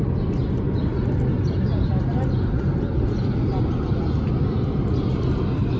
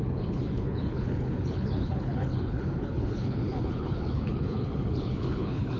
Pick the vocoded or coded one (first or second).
second